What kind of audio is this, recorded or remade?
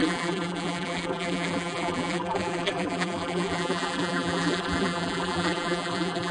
remade